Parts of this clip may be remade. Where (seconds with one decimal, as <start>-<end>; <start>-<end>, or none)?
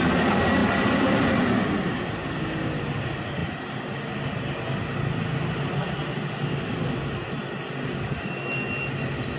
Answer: none